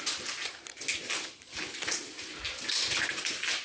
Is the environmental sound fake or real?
real